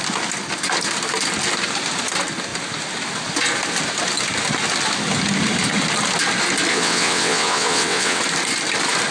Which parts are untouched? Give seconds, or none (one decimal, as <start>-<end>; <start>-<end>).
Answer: 0.0-6.7; 8.2-9.1